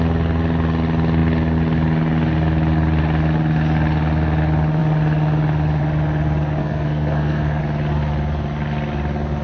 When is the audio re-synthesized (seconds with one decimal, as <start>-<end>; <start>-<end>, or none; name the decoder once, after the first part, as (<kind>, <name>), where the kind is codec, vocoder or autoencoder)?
6.6-7.6 (codec, SNAC)